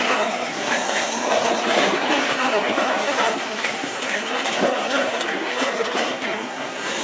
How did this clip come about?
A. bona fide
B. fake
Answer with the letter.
B